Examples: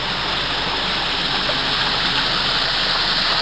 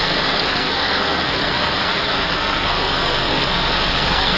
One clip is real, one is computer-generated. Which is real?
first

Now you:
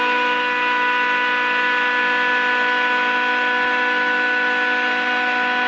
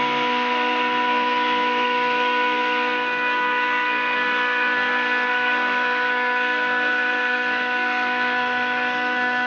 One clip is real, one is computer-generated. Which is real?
first